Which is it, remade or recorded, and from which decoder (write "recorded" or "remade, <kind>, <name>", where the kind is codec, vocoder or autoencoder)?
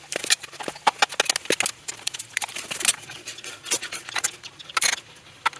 recorded